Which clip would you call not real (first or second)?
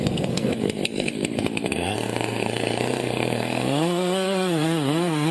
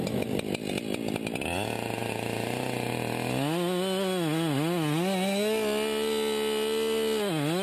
first